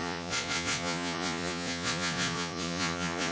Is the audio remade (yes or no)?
yes